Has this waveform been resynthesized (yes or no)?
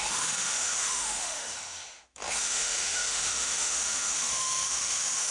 yes